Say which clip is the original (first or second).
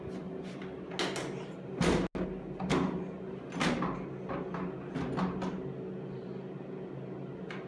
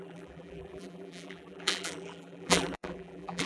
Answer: first